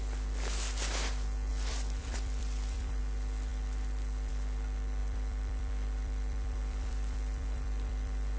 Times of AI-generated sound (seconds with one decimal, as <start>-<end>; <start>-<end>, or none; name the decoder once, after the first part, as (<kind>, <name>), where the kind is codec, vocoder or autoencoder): 1.5-3.0 (vocoder, BigVGAN v2); 5.0-8.4